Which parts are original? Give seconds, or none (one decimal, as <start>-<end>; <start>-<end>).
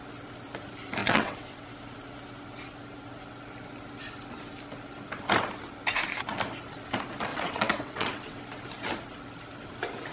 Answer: 0.0-1.0; 1.7-7.3; 8.4-10.1